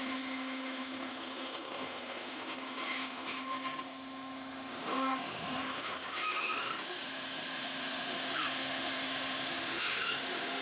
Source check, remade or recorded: remade